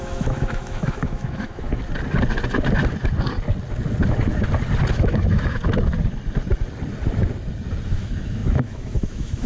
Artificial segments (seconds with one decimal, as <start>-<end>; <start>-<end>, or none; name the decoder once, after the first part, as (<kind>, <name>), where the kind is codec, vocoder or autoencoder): 0.0-1.7 (autoencoder, DAC-VAE); 4.9-5.6; 7.9-9.5